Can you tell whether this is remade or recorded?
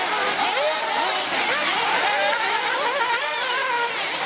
recorded